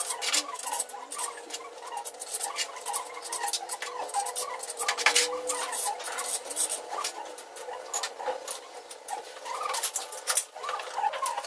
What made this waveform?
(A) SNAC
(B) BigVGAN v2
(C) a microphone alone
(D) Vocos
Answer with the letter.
C